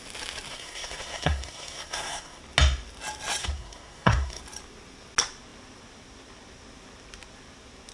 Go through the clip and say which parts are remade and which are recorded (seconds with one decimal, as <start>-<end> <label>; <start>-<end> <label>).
0.0-0.5 recorded; 0.5-2.4 remade; 2.4-3.4 recorded; 3.4-4.4 remade; 4.4-7.9 recorded